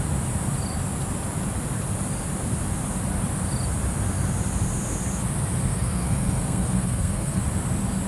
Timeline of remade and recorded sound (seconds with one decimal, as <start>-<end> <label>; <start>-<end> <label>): 0.0-5.7 recorded; 5.7-7.4 remade; 7.4-8.1 recorded